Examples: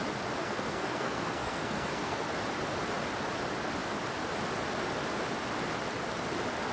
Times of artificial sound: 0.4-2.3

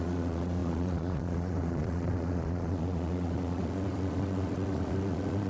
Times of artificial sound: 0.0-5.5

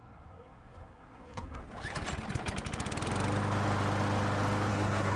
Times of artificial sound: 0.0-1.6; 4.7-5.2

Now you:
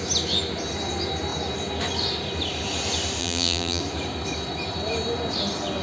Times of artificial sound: 3.2-3.8

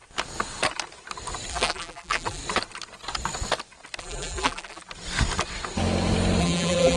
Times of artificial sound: 1.5-2.4; 4.0-4.8; 6.4-7.0

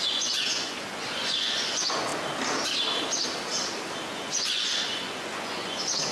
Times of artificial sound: 0.0-2.1; 4.0-6.1

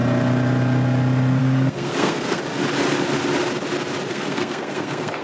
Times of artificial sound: 1.4-2.4; 4.1-5.2